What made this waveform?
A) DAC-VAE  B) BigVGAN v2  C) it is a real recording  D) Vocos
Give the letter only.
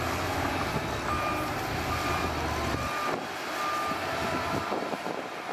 C